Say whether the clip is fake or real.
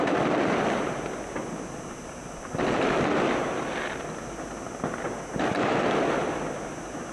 real